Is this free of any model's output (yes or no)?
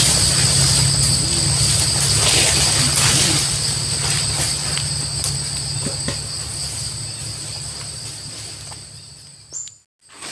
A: yes